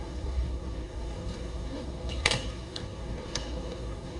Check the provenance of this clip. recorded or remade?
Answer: remade